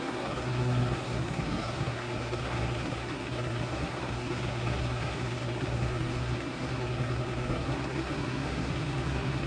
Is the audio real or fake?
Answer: fake